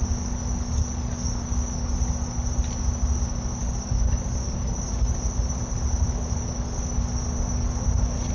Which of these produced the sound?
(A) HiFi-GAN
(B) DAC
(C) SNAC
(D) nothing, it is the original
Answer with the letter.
D